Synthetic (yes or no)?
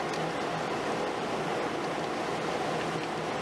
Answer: no